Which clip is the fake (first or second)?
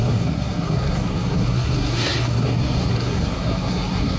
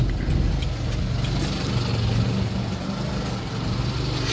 first